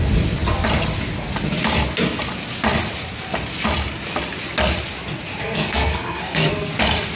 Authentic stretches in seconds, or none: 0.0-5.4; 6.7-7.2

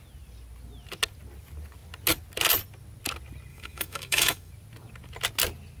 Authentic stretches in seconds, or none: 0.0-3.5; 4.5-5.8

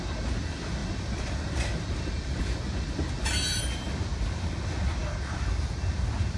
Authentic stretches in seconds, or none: 0.0-0.8; 2.4-6.4